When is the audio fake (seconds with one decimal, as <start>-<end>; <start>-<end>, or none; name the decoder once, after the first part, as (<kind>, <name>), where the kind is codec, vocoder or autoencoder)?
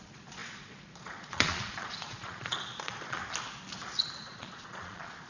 0.0-3.2 (vocoder, Vocos); 4.2-5.3